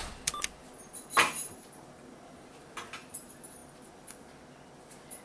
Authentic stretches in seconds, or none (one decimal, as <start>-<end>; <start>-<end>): 0.0-5.2